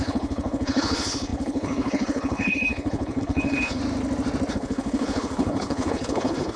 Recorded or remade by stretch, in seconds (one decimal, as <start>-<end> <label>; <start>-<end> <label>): 0.0-3.8 remade; 3.8-4.5 recorded; 4.5-6.6 remade